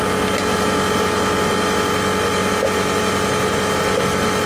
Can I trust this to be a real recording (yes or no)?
yes